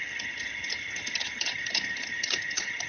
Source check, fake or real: fake